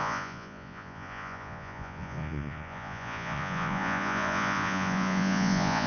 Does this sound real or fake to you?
fake